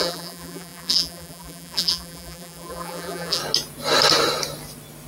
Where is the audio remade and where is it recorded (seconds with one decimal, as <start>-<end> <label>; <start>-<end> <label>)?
0.0-3.4 remade; 3.4-5.1 recorded